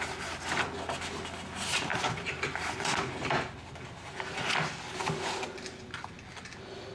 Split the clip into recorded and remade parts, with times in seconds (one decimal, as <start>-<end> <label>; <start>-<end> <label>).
0.0-6.9 recorded